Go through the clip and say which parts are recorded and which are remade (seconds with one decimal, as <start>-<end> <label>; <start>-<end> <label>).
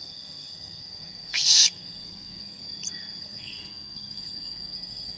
0.0-2.6 remade; 2.6-3.2 recorded; 3.2-5.2 remade